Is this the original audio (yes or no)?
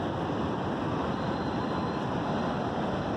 yes